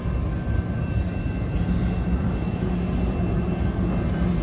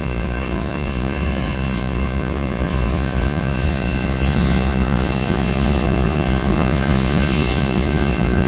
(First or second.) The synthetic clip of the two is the second